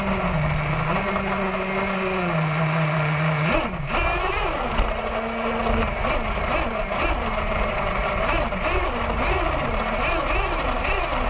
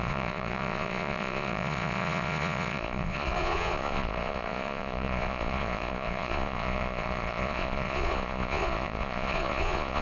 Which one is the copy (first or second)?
second